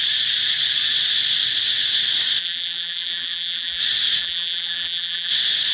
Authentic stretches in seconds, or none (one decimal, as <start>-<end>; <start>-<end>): 0.0-2.4; 3.8-4.2; 5.3-5.7